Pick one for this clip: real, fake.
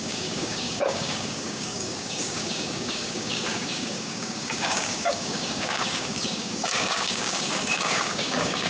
fake